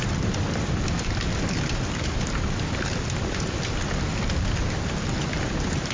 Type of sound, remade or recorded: recorded